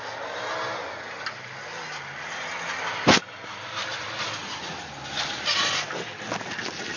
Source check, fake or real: real